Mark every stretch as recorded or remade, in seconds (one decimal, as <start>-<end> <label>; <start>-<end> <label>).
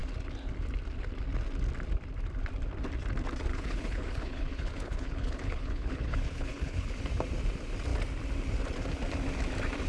0.0-3.5 recorded; 3.5-6.9 remade; 6.9-9.9 recorded